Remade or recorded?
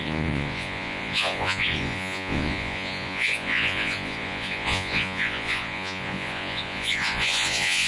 remade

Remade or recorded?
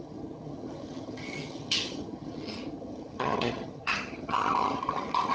remade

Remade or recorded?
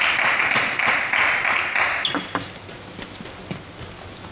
recorded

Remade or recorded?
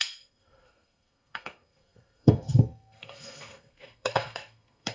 remade